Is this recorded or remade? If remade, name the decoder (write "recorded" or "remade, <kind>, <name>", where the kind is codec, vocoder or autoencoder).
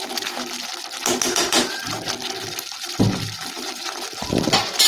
recorded